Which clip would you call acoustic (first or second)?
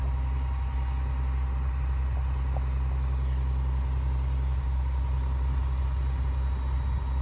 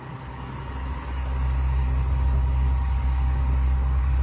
first